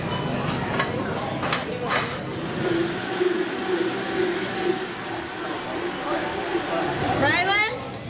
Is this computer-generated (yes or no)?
no